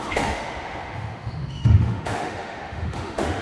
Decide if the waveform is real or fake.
fake